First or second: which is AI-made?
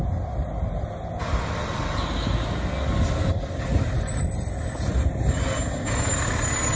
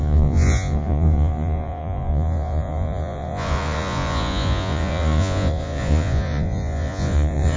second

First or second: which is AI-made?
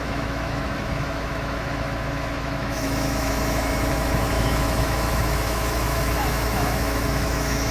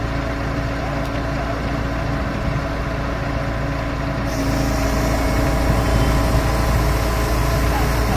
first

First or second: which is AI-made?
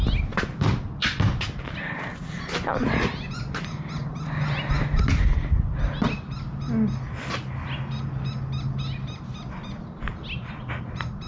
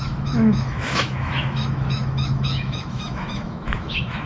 second